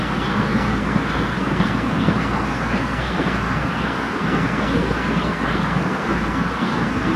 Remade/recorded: remade